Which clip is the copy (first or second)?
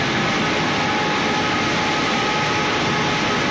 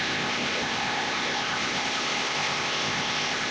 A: second